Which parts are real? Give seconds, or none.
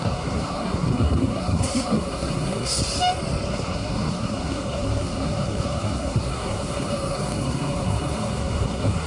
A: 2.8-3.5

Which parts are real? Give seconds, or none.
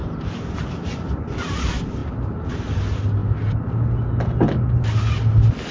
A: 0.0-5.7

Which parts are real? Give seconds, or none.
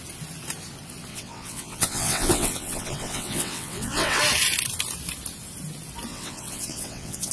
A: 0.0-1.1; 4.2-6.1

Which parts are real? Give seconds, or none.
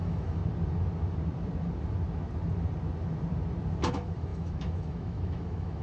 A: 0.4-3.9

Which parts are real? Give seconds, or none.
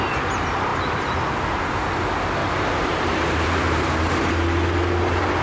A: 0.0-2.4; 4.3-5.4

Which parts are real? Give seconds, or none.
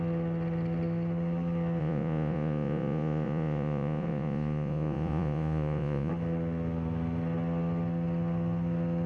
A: 0.0-1.8; 6.1-9.1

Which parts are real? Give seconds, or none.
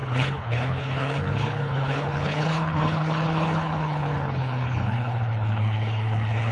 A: none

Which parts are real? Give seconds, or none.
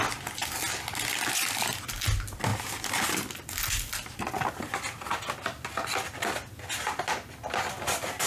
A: 0.0-8.3